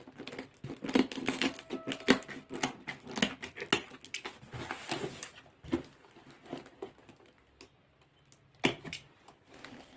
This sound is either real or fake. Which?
real